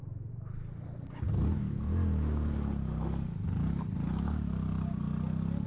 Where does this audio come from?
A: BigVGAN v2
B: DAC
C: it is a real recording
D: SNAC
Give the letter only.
C